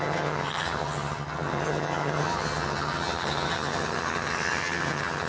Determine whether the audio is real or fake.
fake